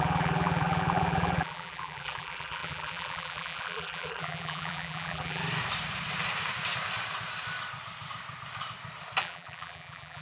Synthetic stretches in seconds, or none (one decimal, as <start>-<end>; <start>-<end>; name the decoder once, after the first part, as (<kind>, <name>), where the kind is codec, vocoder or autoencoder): 0.0-5.4 (vocoder, BigVGAN v2); 9.2-10.2

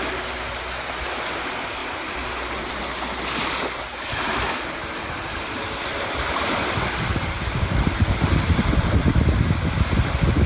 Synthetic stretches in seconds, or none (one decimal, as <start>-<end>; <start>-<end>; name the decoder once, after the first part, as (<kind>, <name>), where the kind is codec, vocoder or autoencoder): 5.9-6.4 (vocoder, BigVGAN v2); 7.1-9.0

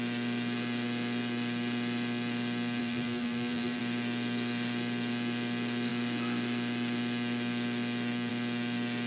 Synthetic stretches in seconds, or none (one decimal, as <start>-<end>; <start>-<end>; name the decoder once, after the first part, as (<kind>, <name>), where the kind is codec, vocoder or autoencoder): 2.8-3.8 (vocoder, BigVGAN v2)

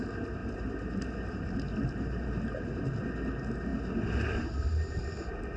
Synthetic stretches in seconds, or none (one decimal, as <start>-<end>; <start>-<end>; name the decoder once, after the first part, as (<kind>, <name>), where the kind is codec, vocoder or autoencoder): 0.4-2.8 (vocoder, BigVGAN v2)

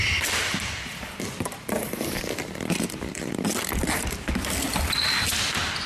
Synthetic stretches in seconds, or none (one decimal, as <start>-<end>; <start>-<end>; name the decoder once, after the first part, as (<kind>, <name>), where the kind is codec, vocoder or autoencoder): 0.0-3.5 (vocoder, BigVGAN v2)